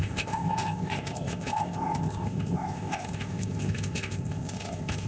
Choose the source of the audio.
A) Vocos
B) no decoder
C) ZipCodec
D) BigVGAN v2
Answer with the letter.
C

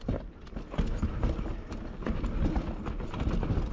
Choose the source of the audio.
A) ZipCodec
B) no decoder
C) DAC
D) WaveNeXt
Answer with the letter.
B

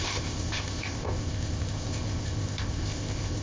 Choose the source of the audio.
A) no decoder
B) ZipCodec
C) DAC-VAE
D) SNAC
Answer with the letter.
B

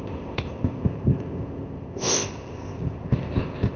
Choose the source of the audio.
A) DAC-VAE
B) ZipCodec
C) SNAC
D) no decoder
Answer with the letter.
B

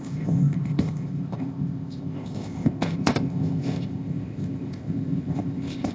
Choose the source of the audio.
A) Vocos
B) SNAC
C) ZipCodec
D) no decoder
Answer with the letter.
C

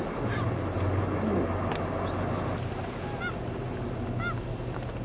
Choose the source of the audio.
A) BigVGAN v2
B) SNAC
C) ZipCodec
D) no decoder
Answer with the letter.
D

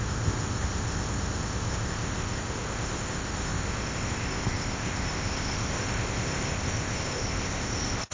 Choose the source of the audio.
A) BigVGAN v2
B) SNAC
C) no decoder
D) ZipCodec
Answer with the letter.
D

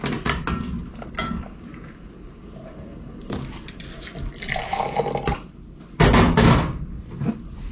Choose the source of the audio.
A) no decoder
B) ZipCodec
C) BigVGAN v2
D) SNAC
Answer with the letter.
A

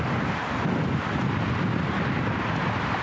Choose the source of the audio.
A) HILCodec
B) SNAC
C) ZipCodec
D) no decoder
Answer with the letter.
D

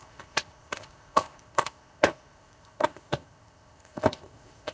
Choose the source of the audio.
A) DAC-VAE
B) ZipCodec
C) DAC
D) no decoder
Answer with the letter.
B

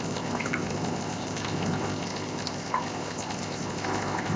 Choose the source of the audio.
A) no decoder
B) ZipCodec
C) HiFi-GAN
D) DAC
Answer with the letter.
B